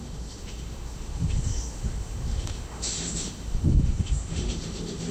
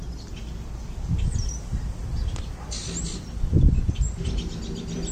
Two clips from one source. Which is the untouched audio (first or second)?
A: second